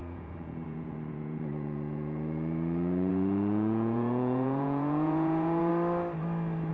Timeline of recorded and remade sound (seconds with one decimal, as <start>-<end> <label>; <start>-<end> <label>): 0.0-5.7 remade; 5.7-6.7 recorded